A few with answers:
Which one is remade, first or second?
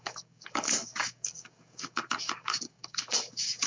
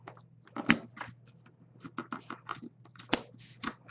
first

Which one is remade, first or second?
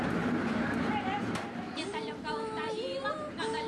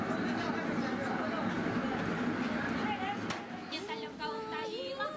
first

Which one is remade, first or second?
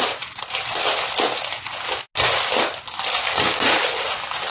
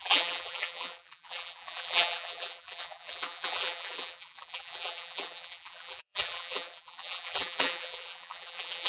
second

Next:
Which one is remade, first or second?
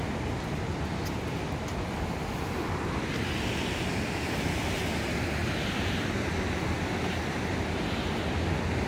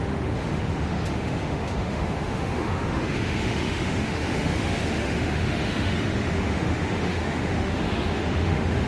second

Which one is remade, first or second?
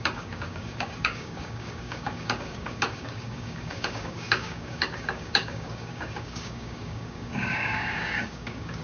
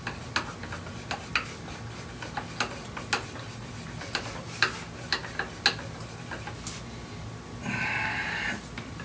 first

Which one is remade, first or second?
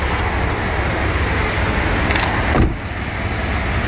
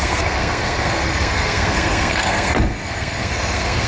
second